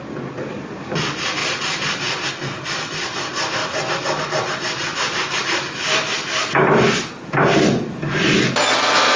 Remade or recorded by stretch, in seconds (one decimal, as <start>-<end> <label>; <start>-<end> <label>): 0.0-1.4 recorded; 1.4-2.3 remade; 2.3-6.4 recorded; 6.4-7.1 remade; 7.1-9.2 recorded